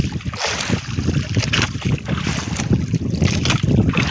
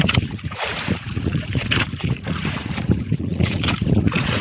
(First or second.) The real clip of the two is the first